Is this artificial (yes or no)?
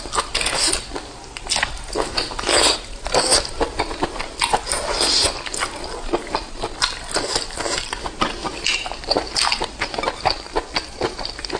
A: no